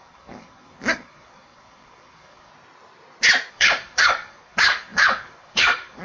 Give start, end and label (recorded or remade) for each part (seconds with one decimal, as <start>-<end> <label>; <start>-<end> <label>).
0.0-2.5 remade; 2.5-3.5 recorded; 3.5-6.0 remade